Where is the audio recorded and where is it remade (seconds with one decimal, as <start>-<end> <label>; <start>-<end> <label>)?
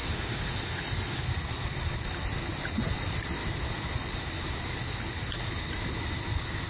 0.0-1.2 remade; 1.2-6.7 recorded